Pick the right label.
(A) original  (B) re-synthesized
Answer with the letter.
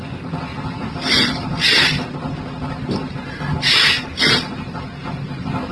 A